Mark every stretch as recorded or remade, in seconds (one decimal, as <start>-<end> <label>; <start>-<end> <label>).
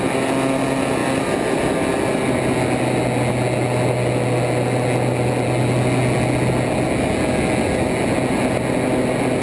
0.0-9.4 recorded